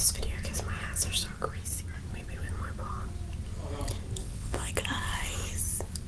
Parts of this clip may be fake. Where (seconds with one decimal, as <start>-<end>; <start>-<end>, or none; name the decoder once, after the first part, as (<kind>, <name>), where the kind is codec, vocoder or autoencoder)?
4.2-4.7 (vocoder, WaveNeXt)